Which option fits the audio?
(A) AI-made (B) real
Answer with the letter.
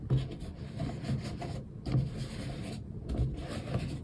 B